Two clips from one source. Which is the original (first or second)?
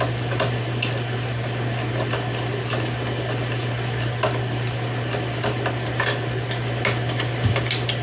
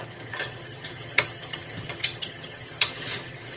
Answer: first